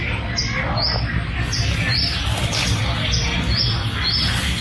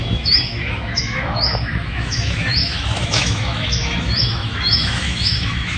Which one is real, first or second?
first